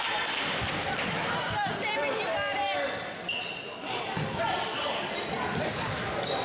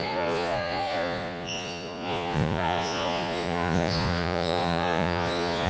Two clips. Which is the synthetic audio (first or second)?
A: second